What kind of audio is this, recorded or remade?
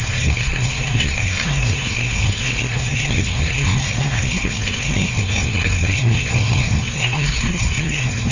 remade